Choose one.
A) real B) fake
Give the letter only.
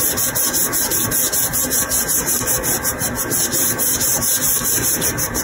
B